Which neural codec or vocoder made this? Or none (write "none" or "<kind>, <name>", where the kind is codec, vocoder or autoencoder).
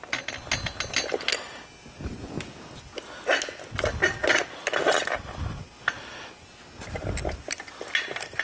none